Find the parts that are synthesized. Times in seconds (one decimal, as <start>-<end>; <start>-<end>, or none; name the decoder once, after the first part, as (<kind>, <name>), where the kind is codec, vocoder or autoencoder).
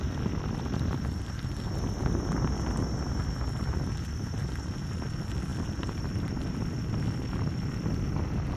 none